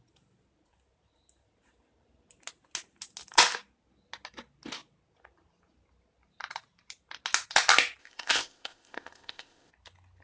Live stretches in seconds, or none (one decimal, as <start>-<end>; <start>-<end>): 0.0-8.0; 9.7-10.2